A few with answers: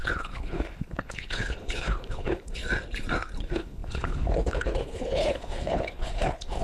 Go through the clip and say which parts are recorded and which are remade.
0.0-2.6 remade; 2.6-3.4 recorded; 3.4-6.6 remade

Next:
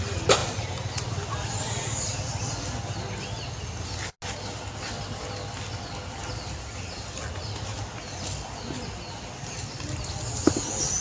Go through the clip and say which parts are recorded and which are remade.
0.0-11.0 recorded

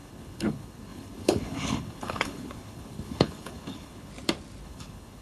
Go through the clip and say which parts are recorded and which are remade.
0.0-4.1 remade; 4.1-4.6 recorded; 4.6-5.2 remade

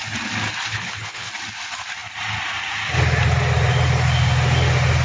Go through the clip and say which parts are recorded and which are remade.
0.0-0.7 recorded; 0.7-1.3 remade; 1.3-5.0 recorded

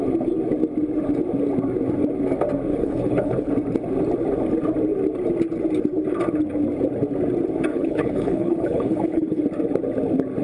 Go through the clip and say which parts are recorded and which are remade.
0.0-2.7 recorded; 2.7-3.5 remade; 3.5-7.7 recorded; 7.7-9.4 remade; 9.4-10.4 recorded